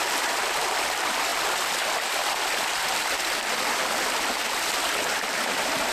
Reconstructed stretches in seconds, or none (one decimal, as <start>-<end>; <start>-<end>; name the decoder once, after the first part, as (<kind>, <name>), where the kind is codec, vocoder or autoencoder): none